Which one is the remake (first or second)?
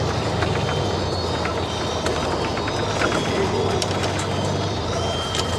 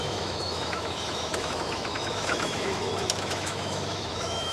second